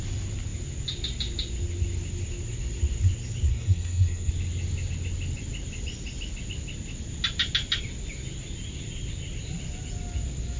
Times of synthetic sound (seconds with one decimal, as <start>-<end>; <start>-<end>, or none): 3.5-4.3